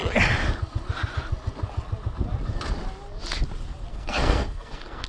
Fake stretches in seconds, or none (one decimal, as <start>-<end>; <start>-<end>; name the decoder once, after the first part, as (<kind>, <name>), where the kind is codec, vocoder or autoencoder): 3.9-5.1 (codec, SNAC)